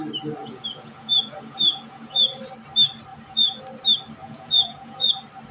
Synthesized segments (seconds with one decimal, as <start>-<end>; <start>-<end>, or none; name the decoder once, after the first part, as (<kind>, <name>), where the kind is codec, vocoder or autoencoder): 0.4-2.4 (vocoder, Vocos); 3.1-3.6; 4.2-5.1